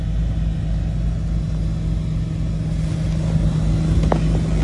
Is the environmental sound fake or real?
real